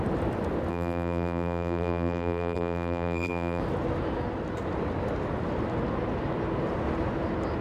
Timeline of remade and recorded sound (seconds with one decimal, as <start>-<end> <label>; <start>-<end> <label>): 0.0-0.7 recorded; 0.7-3.6 remade; 3.6-7.6 recorded